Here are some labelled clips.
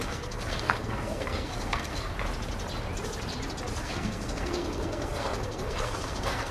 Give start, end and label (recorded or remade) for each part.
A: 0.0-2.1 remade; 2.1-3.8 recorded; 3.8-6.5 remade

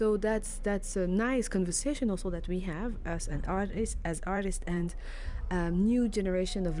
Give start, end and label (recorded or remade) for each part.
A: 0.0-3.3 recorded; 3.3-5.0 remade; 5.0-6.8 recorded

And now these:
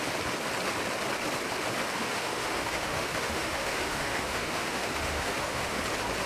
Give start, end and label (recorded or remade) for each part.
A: 0.0-2.0 recorded; 2.0-5.8 remade; 5.8-6.3 recorded

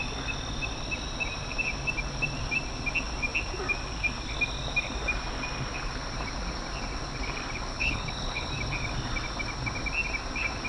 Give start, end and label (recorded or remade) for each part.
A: 0.0-7.7 recorded; 7.7-8.5 remade; 8.5-10.7 recorded